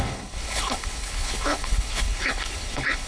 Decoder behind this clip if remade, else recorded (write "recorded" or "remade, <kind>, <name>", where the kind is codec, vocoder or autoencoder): remade, codec, HILCodec